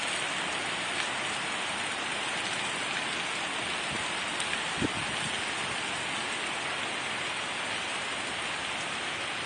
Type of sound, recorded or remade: recorded